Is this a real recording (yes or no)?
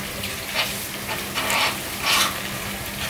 yes